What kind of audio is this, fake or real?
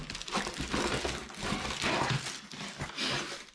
real